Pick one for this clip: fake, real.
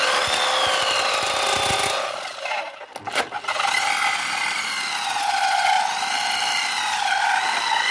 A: real